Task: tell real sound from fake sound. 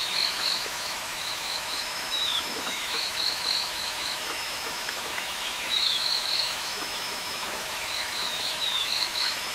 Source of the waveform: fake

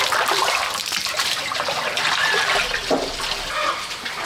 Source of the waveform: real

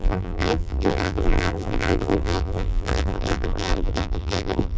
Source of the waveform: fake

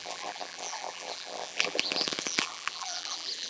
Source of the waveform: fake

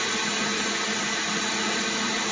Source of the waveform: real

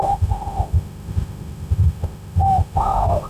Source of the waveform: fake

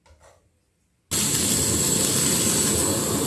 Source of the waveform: real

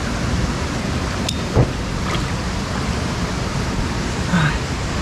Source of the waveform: real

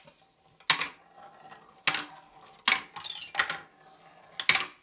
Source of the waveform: real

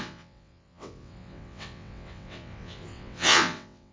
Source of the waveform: fake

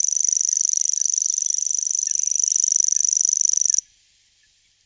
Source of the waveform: real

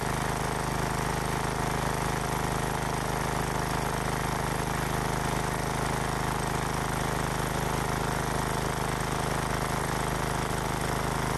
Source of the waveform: real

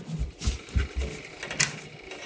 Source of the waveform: real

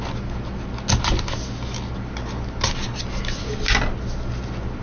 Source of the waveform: real